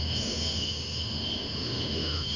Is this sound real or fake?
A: fake